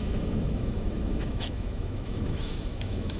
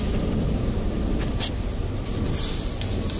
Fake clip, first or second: first